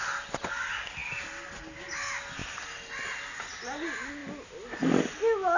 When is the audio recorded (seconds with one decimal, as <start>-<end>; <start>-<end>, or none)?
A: 0.0-5.6